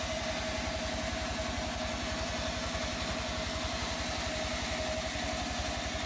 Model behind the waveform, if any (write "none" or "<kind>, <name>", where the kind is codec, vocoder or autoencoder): none